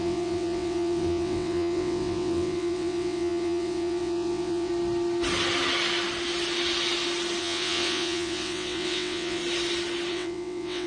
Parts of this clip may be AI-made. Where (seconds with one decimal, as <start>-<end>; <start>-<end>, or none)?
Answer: 0.0-4.7; 7.4-9.4; 10.1-10.9

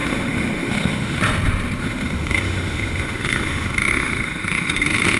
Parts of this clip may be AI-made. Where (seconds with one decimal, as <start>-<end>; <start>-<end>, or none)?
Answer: 0.0-1.2; 1.8-5.2

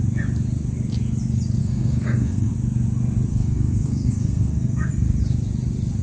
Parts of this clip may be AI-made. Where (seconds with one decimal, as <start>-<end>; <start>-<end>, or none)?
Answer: 1.6-2.5; 3.3-4.9

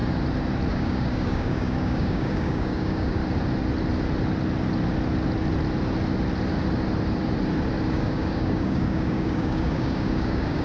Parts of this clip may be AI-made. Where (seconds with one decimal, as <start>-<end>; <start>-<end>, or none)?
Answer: 0.7-3.2; 7.9-10.6